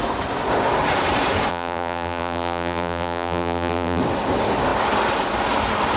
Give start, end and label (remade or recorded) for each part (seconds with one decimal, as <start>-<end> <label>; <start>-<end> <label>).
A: 0.0-1.5 recorded; 1.5-4.0 remade; 4.0-6.0 recorded